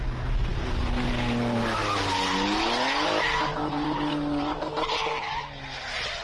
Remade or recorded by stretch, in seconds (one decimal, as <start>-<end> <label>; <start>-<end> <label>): 0.0-3.5 recorded; 3.5-5.4 remade; 5.4-6.2 recorded